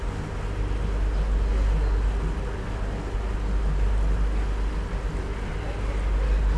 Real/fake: real